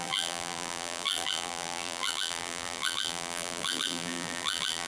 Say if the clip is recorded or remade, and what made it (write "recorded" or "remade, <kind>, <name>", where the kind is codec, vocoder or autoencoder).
remade, vocoder, BigVGAN v2